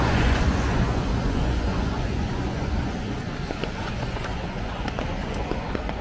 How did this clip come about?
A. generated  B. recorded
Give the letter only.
A